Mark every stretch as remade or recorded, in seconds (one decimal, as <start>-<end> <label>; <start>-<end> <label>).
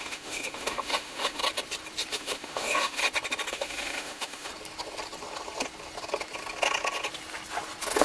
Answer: 0.0-1.4 remade; 1.4-2.1 recorded; 2.1-3.0 remade; 3.0-3.5 recorded; 3.5-4.5 remade; 4.5-8.0 recorded